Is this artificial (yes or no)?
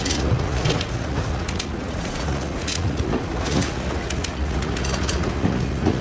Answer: yes